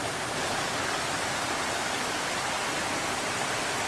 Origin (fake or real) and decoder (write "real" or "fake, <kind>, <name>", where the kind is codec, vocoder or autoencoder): real